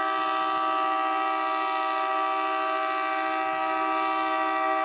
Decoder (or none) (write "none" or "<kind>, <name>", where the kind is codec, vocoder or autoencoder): none